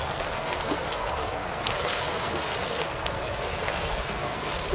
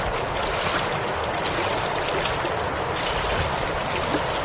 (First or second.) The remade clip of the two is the first